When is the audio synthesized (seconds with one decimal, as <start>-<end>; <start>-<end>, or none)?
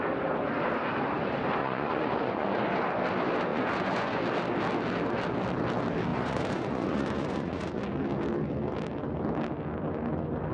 1.6-2.6; 3.5-4.2; 6.1-7.8